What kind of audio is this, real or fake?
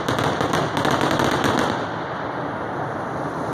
real